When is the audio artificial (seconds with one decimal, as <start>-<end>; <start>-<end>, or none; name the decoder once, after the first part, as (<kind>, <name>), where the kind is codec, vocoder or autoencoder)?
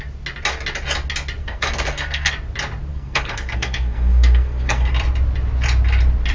1.4-2.3 (codec, SNAC); 2.9-4.9